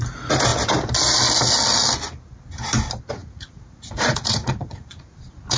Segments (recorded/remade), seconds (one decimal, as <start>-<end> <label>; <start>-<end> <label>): 0.0-3.2 recorded; 3.2-5.6 remade